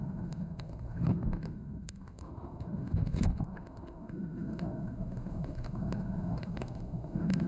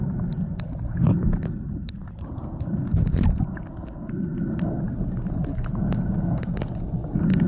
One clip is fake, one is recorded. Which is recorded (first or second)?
second